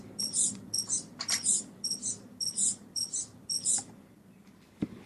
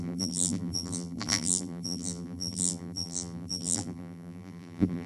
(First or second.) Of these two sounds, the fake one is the second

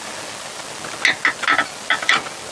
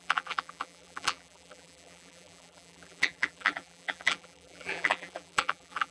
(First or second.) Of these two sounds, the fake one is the second